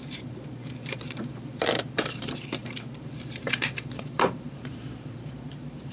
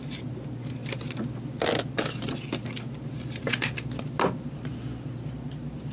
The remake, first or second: first